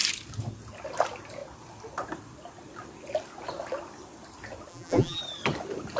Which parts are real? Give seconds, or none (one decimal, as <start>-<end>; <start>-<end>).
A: 0.0-4.7; 5.2-6.0